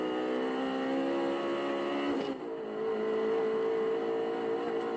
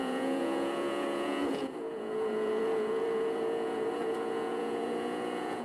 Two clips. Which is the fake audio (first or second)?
second